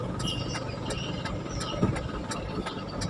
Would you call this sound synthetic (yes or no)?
no